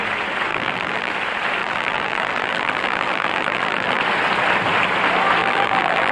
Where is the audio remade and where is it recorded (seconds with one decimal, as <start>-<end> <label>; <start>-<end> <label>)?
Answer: 0.0-0.5 recorded; 0.5-1.1 remade; 1.1-1.6 recorded; 1.6-4.0 remade; 4.0-5.4 recorded; 5.4-6.1 remade